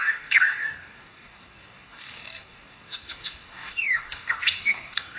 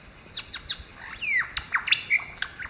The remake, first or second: first